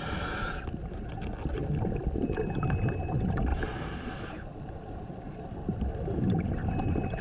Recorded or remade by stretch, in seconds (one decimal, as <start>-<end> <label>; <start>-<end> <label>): 0.0-3.5 recorded; 3.5-4.1 remade; 4.1-4.5 recorded; 4.5-5.2 remade; 5.2-7.2 recorded